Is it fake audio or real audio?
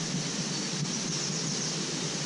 real